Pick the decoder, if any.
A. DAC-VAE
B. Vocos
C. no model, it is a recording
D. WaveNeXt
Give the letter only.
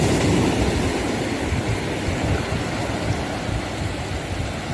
C